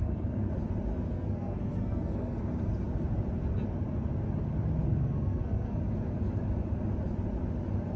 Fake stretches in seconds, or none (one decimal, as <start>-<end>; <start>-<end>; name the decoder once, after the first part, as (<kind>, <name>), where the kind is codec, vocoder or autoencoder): 0.0-0.5 (codec, SNAC); 0.9-2.4; 4.8-5.8